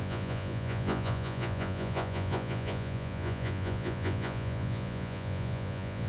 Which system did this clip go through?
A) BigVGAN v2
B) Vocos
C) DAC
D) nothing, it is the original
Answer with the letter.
B